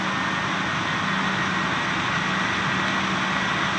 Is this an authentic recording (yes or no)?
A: yes